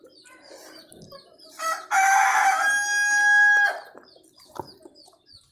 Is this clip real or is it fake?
real